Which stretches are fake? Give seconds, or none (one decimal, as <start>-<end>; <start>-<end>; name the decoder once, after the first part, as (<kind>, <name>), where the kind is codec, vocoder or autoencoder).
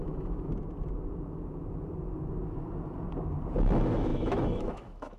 0.0-0.5 (autoencoder, DAC-VAE); 3.6-5.2